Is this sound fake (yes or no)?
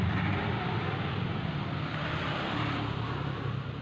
no